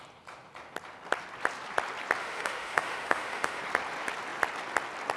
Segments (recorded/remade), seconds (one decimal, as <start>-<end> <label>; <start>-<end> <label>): 0.0-2.2 recorded; 2.2-3.6 remade; 3.6-5.2 recorded